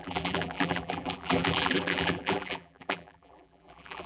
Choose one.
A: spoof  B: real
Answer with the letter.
A